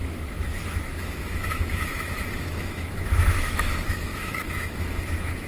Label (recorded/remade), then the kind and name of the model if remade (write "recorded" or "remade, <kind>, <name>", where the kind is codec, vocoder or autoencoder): remade, autoencoder, DAC-VAE